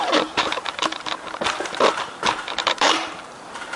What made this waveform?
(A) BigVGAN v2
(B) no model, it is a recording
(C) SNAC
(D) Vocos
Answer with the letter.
A